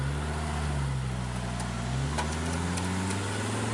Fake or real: real